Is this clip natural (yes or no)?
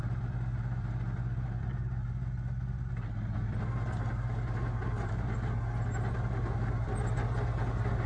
yes